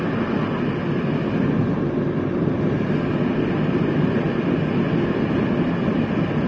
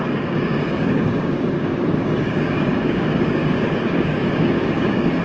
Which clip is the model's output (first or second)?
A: second